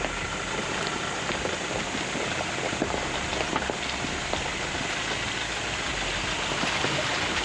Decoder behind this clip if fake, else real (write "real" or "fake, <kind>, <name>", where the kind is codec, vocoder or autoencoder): real